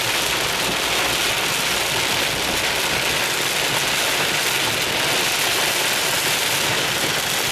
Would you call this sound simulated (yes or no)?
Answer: no